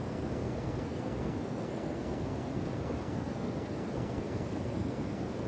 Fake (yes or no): yes